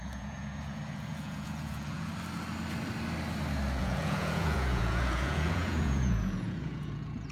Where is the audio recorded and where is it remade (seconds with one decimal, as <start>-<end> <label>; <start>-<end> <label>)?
0.0-2.1 remade; 2.1-3.8 recorded; 3.8-7.3 remade